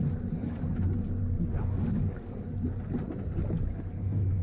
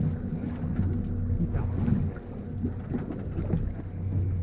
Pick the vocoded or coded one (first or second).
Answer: first